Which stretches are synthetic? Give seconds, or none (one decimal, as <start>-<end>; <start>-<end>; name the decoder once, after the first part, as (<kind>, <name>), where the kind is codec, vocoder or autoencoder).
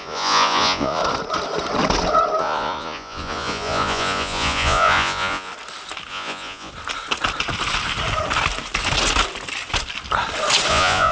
0.0-1.0 (vocoder, Vocos); 2.4-5.5; 6.1-6.7; 10.7-11.1